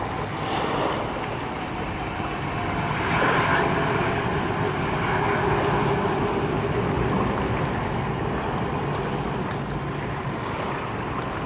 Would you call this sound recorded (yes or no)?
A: yes